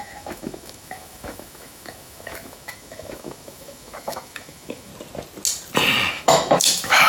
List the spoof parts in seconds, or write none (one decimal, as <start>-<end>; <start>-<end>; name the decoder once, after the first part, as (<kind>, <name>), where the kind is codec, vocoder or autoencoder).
0.0-4.9 (autoencoder, DAC-VAE); 6.1-7.1